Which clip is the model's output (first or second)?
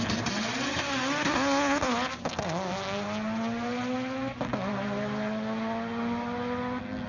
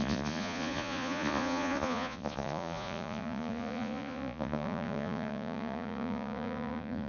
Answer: second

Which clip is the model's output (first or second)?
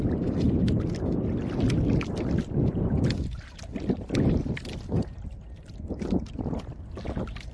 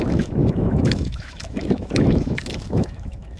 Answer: second